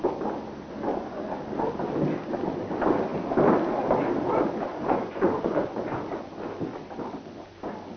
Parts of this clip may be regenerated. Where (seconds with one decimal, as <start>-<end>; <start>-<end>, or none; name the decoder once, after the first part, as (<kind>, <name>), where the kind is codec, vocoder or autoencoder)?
0.9-1.4 (vocoder, Vocos); 4.7-6.0